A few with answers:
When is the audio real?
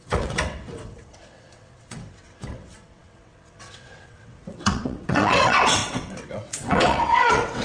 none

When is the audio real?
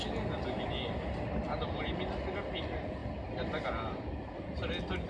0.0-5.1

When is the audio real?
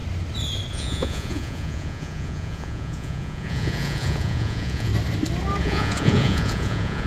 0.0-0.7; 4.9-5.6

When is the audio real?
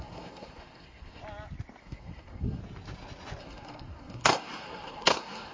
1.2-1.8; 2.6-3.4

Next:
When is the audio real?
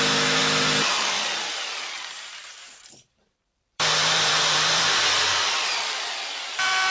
0.4-2.1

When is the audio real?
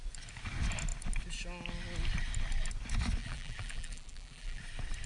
0.0-3.2; 4.6-5.1